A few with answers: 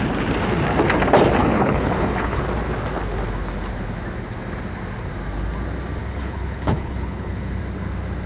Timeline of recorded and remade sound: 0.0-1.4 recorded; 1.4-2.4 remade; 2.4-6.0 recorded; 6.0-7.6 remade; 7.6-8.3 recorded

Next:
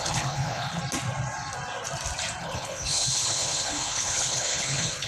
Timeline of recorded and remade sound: 0.0-0.8 remade; 0.8-2.4 recorded; 2.4-5.1 remade

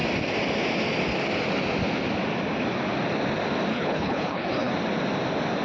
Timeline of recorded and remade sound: 0.0-3.7 recorded; 3.7-4.7 remade; 4.7-5.6 recorded

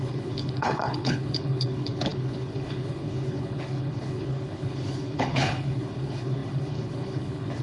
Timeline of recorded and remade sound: 0.0-7.6 remade

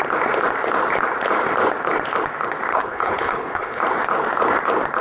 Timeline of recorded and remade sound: 0.0-2.7 recorded; 2.7-3.8 remade; 3.8-5.0 recorded

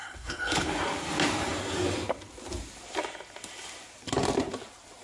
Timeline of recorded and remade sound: 0.0-0.7 remade; 0.7-5.0 recorded